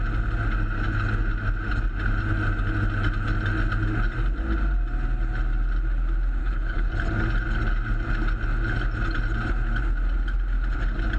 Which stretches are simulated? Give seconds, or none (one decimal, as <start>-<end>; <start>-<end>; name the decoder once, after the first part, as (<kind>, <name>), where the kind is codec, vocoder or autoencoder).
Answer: 6.4-6.9 (codec, HILCodec)